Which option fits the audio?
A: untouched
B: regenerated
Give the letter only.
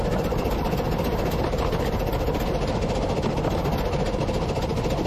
A